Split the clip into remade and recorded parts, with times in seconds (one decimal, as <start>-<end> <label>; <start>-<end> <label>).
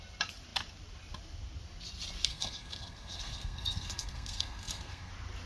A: 0.0-2.3 recorded; 2.3-5.1 remade; 5.1-5.5 recorded